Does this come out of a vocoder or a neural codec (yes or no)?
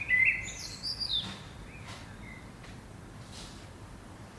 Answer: yes